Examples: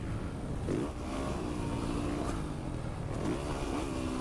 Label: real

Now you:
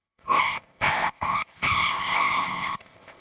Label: fake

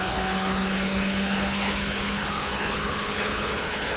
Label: fake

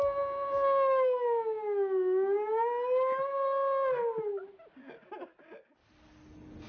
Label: real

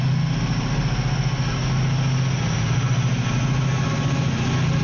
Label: real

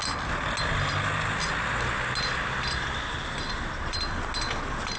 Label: real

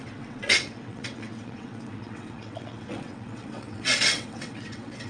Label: fake